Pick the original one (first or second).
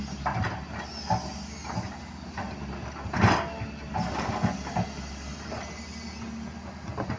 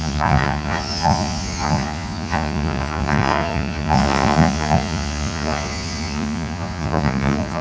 first